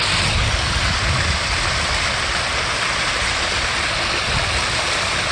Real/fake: real